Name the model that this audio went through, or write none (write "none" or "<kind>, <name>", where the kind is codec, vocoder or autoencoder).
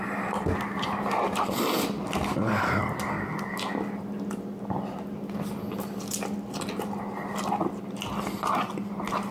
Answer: none